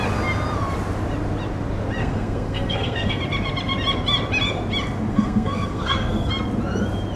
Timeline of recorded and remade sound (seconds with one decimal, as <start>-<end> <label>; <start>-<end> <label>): 0.0-2.0 recorded; 2.0-3.2 remade; 3.2-5.1 recorded; 5.1-6.3 remade; 6.3-7.2 recorded